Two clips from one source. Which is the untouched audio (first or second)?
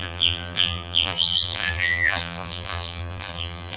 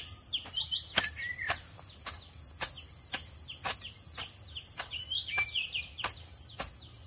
second